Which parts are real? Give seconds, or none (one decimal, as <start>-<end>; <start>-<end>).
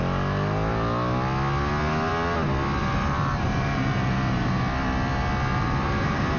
0.0-2.8; 4.5-5.5